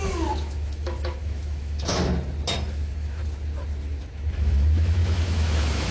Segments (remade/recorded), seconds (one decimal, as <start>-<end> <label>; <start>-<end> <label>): 0.0-2.1 remade; 2.1-2.7 recorded; 2.7-3.2 remade; 3.2-4.0 recorded; 4.0-5.9 remade